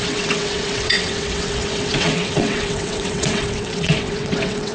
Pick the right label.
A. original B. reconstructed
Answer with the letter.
B